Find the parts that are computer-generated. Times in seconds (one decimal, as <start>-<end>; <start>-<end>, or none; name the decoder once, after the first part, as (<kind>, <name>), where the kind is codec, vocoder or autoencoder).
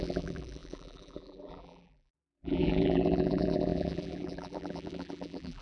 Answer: 0.0-5.6 (vocoder, BigVGAN v2)